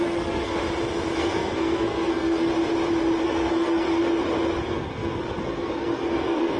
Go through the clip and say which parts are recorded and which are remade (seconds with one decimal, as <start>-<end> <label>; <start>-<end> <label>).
0.0-0.6 remade; 0.6-1.2 recorded; 1.2-2.5 remade; 2.5-3.2 recorded; 3.2-4.0 remade; 4.0-4.6 recorded; 4.6-6.6 remade